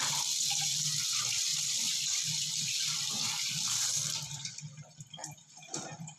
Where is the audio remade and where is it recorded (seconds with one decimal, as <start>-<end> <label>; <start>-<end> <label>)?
0.0-1.5 recorded; 1.5-4.6 remade; 4.6-5.4 recorded; 5.4-6.2 remade

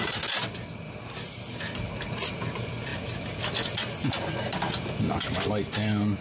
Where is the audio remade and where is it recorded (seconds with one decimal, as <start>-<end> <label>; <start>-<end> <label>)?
0.0-6.2 recorded

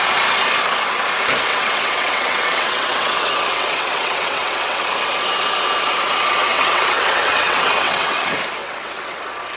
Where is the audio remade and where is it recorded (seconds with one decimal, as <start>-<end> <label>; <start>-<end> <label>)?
0.0-1.5 recorded; 1.5-4.8 remade; 4.8-6.4 recorded; 6.4-8.2 remade; 8.2-8.6 recorded; 8.6-9.2 remade; 9.2-9.6 recorded

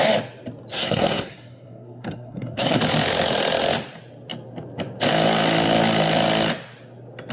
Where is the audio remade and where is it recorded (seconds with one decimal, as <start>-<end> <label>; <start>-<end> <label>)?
0.0-0.7 recorded; 0.7-2.8 remade; 2.8-7.3 recorded

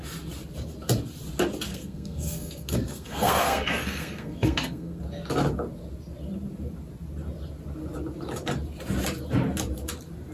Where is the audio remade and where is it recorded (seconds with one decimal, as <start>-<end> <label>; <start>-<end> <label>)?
0.0-1.7 recorded; 1.7-5.0 remade; 5.0-10.3 recorded

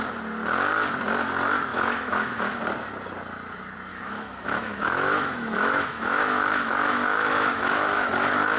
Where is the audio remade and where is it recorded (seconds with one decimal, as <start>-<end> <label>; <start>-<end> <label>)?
0.0-1.7 recorded; 1.7-2.6 remade; 2.6-3.9 recorded; 3.9-8.1 remade; 8.1-8.6 recorded

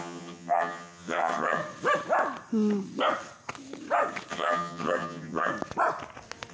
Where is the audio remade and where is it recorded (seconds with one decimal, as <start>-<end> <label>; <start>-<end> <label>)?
0.0-1.6 remade; 1.6-4.3 recorded; 4.3-5.5 remade; 5.5-6.5 recorded